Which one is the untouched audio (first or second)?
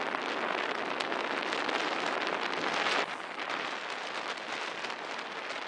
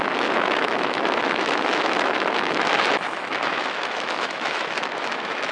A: first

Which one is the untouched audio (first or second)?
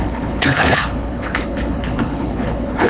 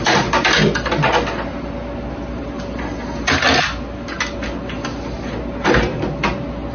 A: second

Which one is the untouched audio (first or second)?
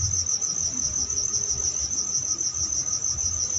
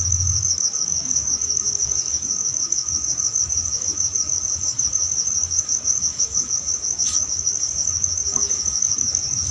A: first